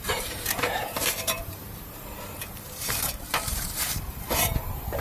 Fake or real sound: fake